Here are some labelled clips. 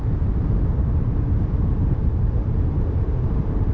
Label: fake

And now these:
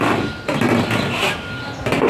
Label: real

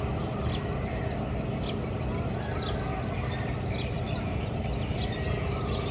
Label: real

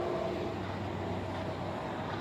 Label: real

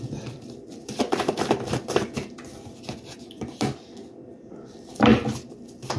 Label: fake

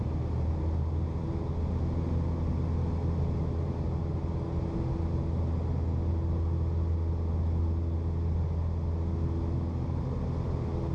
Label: real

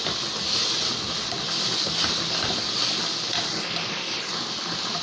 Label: real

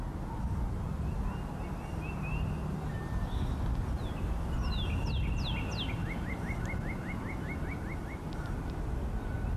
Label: real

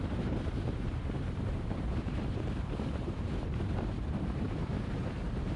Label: fake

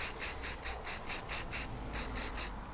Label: real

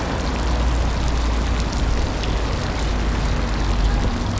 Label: real